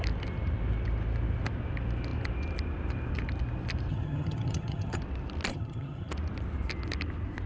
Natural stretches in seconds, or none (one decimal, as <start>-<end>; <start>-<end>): 0.0-3.9; 5.0-5.5; 6.1-7.5